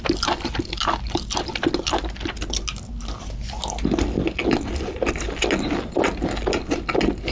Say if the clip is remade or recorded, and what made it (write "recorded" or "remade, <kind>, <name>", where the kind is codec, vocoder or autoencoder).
recorded